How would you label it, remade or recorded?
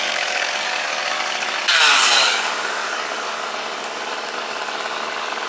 remade